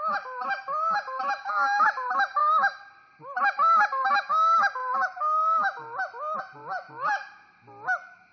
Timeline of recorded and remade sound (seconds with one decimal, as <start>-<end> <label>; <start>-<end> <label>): 0.0-8.3 recorded